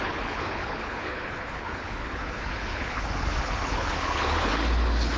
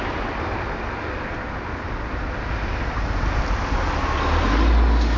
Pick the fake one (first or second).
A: first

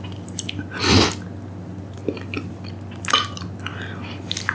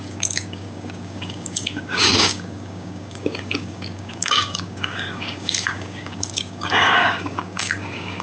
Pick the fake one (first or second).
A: second